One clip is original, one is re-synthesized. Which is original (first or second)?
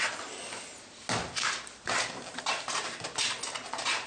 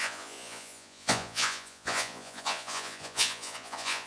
first